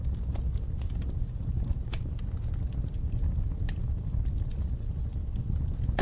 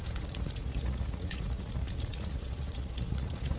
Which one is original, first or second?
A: first